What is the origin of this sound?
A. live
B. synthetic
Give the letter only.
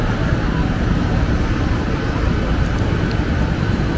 A